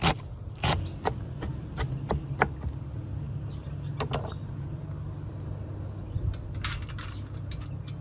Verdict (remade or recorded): recorded